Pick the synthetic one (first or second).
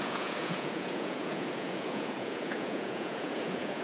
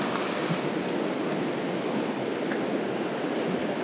first